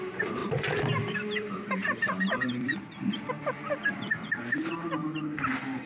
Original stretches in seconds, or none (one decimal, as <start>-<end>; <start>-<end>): 5.0-5.9